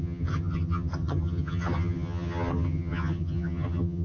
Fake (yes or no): yes